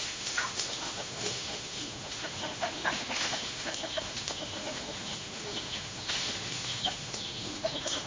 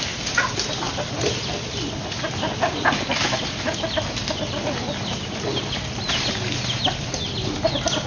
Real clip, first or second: second